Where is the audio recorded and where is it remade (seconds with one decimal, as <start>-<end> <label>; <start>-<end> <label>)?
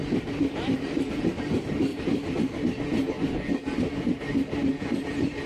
0.0-1.4 remade; 1.4-1.9 recorded; 1.9-2.6 remade; 2.6-5.5 recorded